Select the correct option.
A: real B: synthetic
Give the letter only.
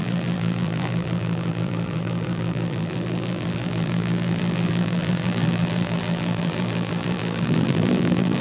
B